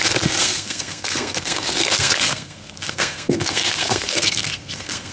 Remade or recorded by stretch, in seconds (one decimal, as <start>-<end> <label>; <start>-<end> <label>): 0.0-5.1 remade